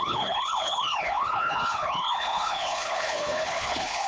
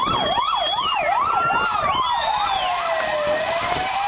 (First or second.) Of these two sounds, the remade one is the first